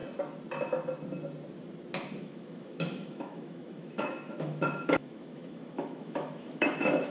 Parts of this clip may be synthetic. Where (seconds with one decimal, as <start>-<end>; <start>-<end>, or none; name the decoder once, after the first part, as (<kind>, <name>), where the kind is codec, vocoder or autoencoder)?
2.2-7.1 (autoencoder, DAC-VAE)